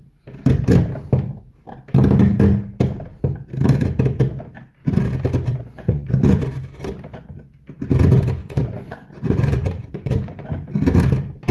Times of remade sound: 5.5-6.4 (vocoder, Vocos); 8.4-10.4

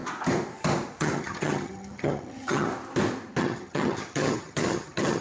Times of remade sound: 1.0-2.7 (vocoder, HiFi-GAN); 3.4-5.2